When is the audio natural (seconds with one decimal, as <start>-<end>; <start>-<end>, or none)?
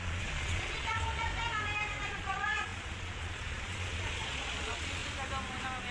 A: 1.3-2.1; 5.0-5.9